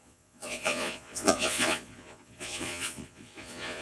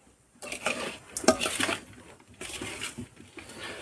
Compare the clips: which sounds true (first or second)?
second